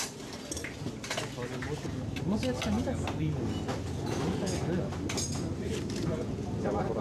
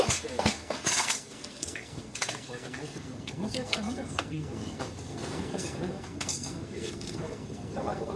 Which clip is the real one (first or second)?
first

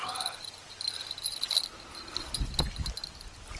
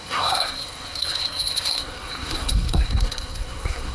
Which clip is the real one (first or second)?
first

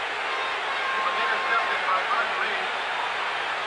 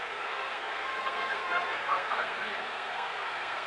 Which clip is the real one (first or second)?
first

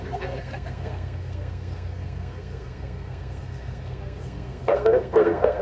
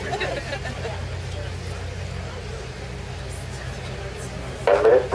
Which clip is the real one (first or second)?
second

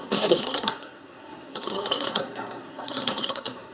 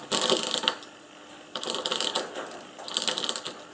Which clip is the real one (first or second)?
second